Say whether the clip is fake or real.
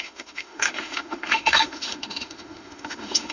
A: fake